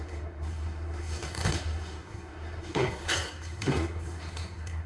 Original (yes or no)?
no